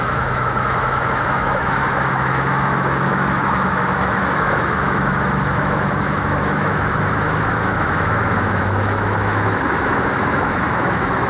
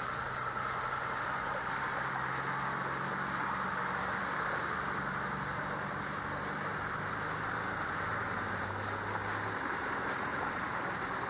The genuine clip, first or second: second